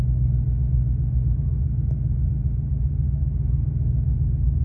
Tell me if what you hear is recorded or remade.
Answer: recorded